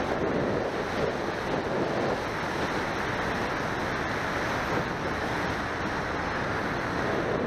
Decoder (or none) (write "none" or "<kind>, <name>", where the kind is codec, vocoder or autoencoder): none